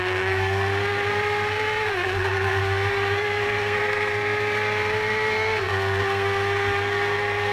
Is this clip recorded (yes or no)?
no